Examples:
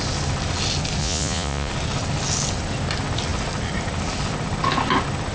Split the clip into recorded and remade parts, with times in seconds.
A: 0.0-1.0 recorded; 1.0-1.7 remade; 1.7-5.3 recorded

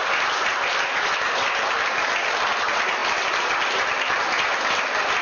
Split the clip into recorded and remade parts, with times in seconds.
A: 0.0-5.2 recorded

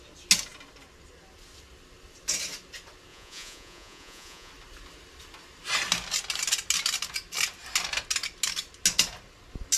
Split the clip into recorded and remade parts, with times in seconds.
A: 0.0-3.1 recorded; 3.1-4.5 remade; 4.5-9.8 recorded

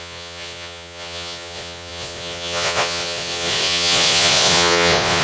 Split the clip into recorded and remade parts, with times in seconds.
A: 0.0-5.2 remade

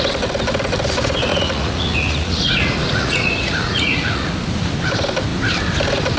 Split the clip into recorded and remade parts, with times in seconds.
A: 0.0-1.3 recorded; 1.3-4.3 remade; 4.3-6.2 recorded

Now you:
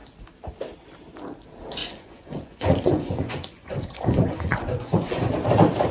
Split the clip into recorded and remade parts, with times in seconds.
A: 0.0-1.8 recorded; 1.8-5.3 remade; 5.3-5.9 recorded

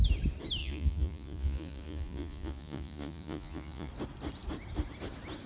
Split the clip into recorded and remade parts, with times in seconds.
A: 0.0-0.6 recorded; 0.6-3.9 remade; 3.9-5.5 recorded